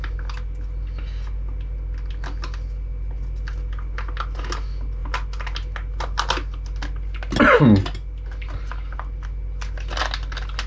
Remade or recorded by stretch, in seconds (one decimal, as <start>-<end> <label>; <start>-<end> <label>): 0.0-10.7 recorded